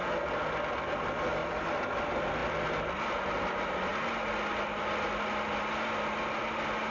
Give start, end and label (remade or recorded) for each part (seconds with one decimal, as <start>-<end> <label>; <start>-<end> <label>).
0.0-6.9 recorded